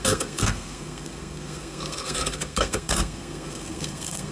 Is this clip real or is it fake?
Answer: fake